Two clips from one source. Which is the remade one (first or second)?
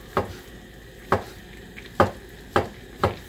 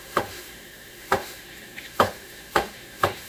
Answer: second